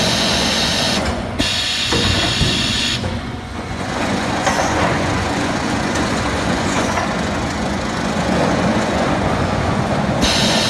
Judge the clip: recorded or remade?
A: remade